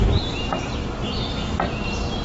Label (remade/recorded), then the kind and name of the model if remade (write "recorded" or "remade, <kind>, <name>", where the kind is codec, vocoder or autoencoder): recorded